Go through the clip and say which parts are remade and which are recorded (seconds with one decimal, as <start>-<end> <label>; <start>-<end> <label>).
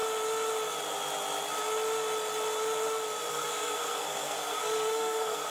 0.0-3.3 recorded; 3.3-5.5 remade